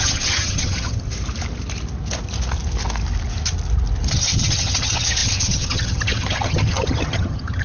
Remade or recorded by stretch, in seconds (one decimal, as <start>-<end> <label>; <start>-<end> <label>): 0.0-1.1 remade; 1.1-4.1 recorded; 4.1-7.6 remade